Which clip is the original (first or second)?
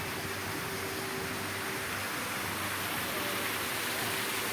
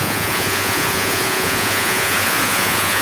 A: first